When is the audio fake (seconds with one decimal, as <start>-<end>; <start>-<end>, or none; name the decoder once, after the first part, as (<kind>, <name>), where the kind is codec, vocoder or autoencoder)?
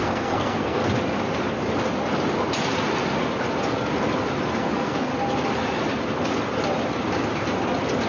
0.0-0.8 (codec, SNAC); 4.6-5.1